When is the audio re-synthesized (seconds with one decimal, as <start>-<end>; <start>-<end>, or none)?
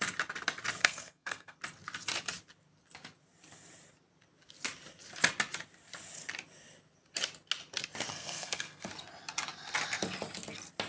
0.8-1.6; 8.1-8.9